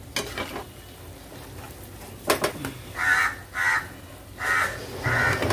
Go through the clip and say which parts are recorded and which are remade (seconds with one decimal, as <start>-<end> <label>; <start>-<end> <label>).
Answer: 0.0-5.5 recorded